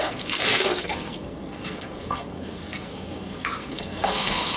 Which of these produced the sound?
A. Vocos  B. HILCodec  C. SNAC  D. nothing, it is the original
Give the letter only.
C